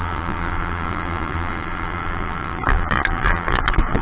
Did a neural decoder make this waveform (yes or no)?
yes